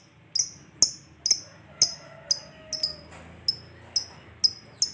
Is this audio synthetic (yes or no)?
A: no